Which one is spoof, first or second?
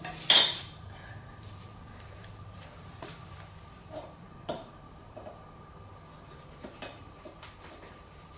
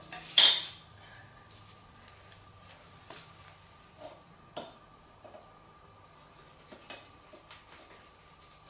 first